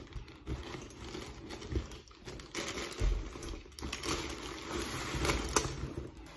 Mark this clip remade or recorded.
recorded